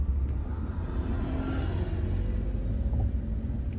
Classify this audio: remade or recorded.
recorded